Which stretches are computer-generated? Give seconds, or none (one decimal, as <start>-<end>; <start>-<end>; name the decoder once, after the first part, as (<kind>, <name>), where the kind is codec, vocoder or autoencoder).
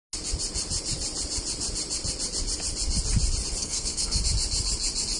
3.6-4.2 (codec, SNAC)